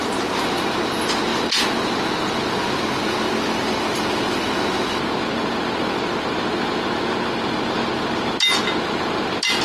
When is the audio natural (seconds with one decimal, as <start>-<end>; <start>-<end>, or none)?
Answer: 0.0-9.6